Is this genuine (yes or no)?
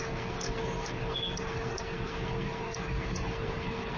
no